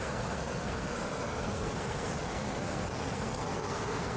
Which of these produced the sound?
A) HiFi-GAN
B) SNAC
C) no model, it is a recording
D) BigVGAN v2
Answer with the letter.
B